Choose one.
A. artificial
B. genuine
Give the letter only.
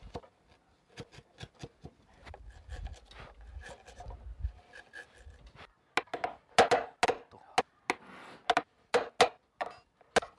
B